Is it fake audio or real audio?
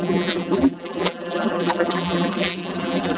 fake